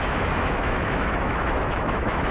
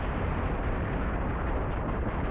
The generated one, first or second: first